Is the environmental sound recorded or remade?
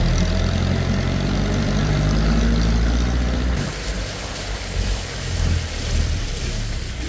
remade